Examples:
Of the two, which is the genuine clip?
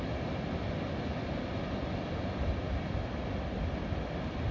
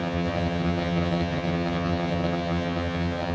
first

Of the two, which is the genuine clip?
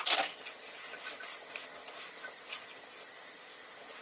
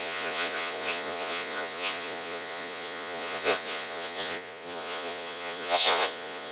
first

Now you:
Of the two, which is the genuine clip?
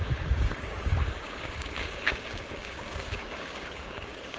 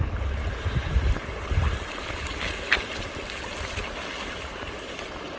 second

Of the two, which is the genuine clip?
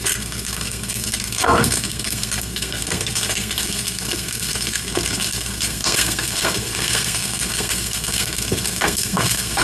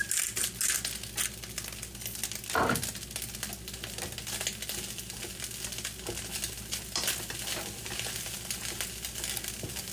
second